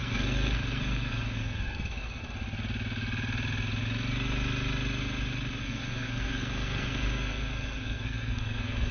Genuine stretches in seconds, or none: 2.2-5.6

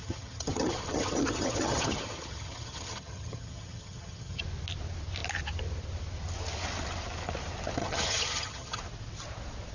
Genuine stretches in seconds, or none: 4.4-7.8; 8.8-9.7

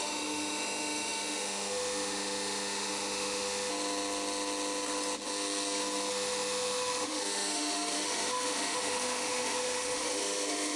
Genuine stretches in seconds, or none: 3.7-6.1

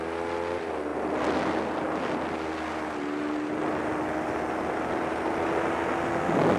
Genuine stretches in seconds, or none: 0.0-6.6